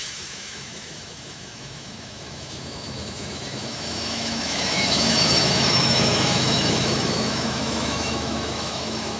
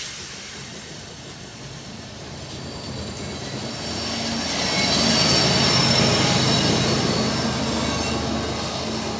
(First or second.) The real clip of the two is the second